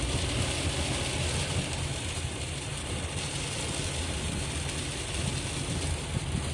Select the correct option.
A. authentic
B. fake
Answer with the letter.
A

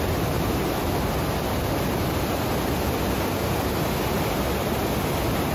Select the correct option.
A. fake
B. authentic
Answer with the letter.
B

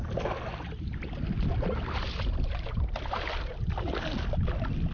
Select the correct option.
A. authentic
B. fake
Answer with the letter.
A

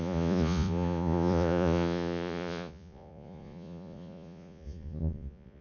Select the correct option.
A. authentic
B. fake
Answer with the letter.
B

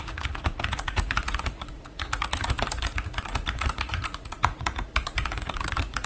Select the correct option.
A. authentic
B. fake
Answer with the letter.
B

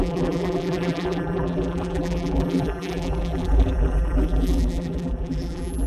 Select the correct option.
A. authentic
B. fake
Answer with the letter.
B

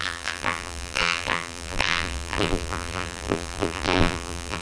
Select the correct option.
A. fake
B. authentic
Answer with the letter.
A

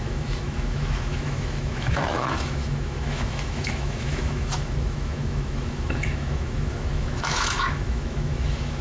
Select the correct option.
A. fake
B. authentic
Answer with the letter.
A